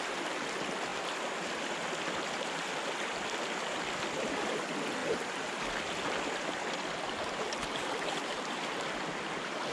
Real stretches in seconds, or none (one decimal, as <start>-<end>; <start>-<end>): 0.0-5.0; 5.6-9.7